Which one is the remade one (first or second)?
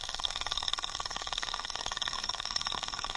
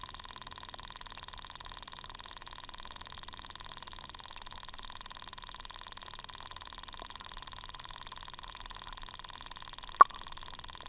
first